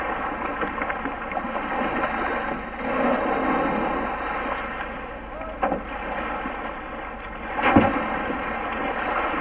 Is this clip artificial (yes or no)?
no